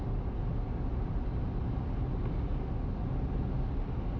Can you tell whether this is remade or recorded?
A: recorded